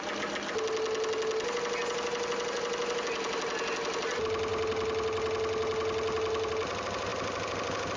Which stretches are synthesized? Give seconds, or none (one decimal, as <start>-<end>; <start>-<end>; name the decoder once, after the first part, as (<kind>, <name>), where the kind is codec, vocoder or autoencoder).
none